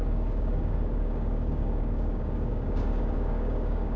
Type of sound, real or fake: fake